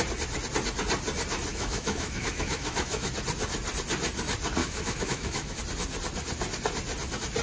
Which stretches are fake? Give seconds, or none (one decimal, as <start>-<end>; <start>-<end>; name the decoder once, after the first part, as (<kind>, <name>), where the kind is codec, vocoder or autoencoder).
1.5-3.1 (autoencoder, DAC-VAE); 4.6-5.6